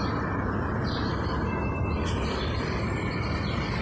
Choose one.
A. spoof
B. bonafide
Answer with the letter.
B